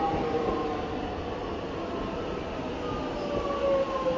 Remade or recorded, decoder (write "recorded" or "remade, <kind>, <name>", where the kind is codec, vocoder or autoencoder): recorded